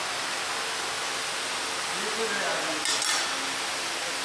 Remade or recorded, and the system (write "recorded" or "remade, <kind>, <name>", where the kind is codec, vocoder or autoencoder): recorded